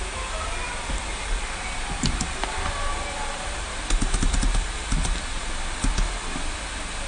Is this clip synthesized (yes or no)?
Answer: no